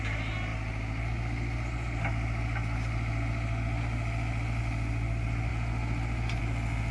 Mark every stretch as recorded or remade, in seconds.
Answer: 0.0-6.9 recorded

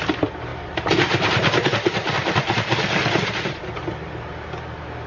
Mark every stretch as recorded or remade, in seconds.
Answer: 0.0-0.5 recorded; 0.5-3.6 remade; 3.6-5.1 recorded

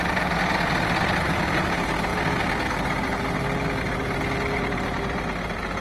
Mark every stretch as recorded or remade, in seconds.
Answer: 0.0-5.8 recorded

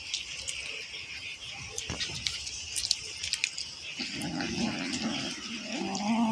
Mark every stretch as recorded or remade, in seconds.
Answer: 0.0-1.3 recorded; 1.3-3.5 remade; 3.5-6.3 recorded

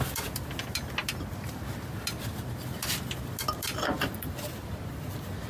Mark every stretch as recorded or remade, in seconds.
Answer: 0.0-5.5 recorded

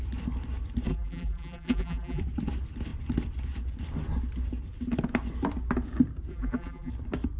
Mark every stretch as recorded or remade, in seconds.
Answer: 0.0-0.9 recorded; 0.9-2.2 remade; 2.2-6.3 recorded; 6.3-6.9 remade; 6.9-7.4 recorded

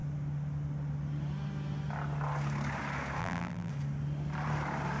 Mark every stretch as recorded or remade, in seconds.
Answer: 0.0-3.2 recorded; 3.2-3.7 remade; 3.7-5.0 recorded

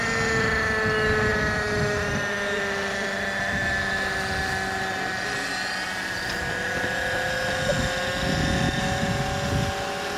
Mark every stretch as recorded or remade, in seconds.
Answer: 0.0-10.2 recorded